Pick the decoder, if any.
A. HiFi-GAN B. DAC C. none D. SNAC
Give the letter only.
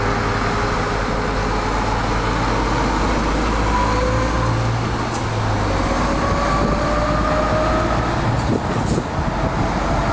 C